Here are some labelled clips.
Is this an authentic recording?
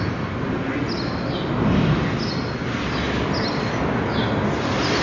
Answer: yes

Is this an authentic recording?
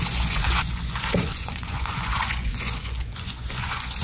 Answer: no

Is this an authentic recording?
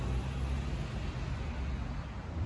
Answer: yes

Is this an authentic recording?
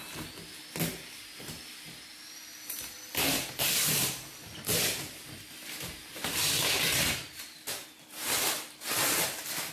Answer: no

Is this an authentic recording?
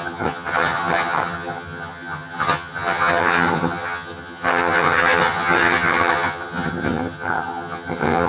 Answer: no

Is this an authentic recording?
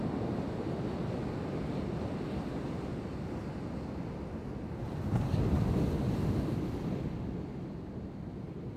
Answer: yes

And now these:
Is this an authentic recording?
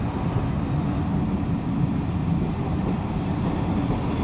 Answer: yes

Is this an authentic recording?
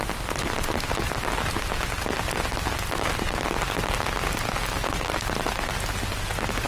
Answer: yes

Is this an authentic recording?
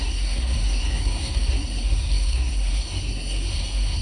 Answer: no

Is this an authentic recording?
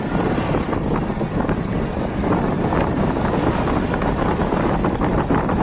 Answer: yes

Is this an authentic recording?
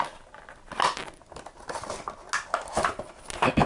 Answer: yes